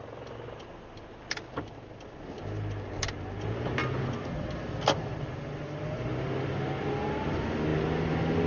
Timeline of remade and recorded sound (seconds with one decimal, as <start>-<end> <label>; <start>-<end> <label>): 0.0-8.5 recorded